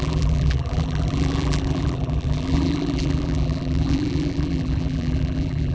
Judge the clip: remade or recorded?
remade